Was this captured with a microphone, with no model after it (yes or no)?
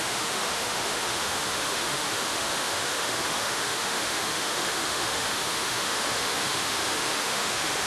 no